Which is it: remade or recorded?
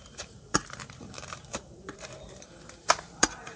remade